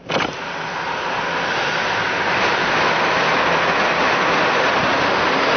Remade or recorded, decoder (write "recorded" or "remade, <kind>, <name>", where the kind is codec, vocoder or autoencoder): recorded